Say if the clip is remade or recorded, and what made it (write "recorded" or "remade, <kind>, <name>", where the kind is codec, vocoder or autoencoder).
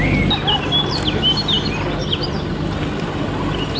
recorded